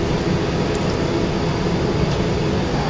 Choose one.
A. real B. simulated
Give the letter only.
A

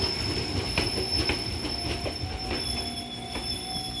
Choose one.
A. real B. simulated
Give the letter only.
A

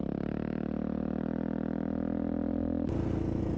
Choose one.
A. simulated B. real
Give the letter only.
B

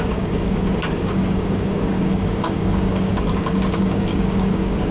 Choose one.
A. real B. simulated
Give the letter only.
B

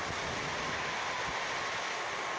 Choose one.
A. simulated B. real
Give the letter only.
B